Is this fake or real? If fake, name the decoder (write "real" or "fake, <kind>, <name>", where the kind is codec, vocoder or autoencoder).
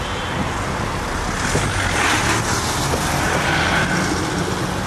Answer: real